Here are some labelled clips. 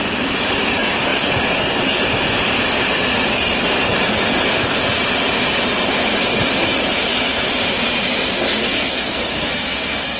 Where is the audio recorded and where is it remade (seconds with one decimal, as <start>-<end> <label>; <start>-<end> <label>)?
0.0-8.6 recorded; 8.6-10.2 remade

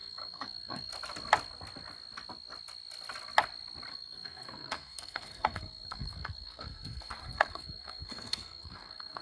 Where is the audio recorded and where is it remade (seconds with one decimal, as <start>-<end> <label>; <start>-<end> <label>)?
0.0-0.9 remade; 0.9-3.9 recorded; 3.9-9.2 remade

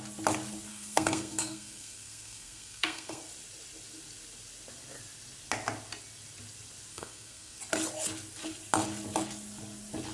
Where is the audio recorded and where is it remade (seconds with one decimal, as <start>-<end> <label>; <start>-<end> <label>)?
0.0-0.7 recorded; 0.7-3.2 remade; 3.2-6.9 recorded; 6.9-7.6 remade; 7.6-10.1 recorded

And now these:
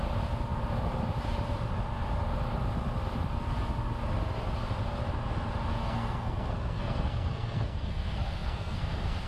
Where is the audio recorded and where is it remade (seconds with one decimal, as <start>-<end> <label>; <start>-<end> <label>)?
0.0-5.8 recorded; 5.8-9.3 remade